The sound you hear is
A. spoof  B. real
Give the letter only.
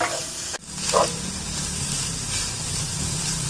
B